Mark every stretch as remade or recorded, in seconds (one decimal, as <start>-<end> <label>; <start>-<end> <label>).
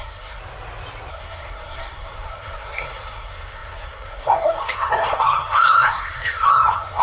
0.0-0.4 remade; 0.4-1.1 recorded; 1.1-7.0 remade